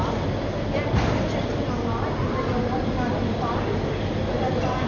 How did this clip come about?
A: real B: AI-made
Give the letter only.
A